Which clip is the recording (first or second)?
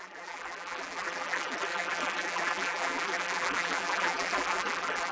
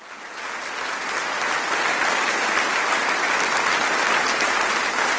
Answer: second